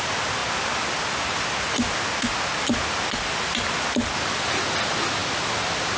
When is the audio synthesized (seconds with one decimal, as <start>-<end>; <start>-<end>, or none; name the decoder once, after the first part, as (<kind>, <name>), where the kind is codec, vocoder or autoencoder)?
none